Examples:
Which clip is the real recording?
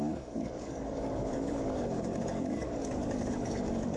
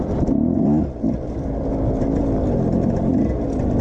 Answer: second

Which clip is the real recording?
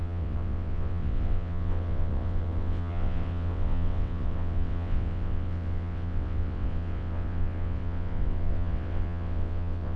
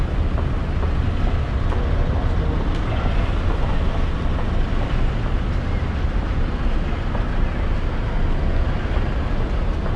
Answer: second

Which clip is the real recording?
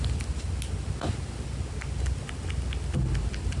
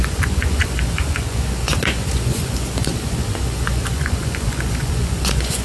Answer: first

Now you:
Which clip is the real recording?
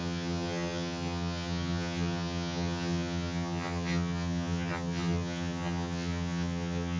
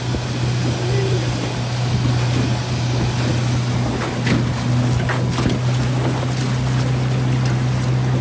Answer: second